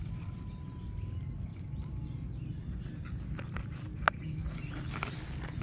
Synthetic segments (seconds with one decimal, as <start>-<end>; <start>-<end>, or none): none